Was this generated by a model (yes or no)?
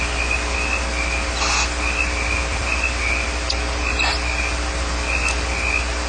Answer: no